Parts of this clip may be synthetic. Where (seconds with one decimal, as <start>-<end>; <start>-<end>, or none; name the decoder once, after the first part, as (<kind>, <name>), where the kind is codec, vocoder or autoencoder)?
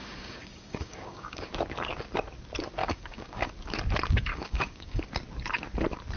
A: 0.0-1.5 (codec, DAC); 2.8-3.5; 4.3-5.0